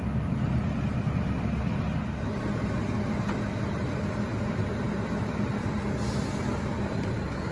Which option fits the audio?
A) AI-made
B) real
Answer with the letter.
B